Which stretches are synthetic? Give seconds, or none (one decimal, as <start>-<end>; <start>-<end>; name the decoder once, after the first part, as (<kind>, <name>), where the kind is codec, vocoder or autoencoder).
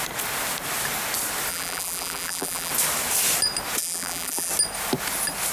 1.5-2.7 (vocoder, BigVGAN v2); 3.8-4.5